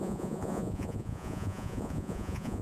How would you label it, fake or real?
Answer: fake